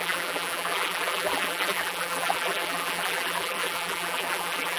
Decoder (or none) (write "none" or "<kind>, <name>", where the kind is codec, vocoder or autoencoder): vocoder, BigVGAN v2